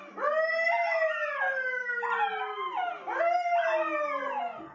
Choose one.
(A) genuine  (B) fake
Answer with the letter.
A